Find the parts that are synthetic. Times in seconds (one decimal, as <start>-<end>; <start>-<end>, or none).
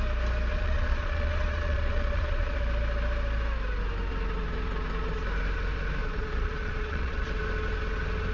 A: 0.5-2.6; 6.0-7.3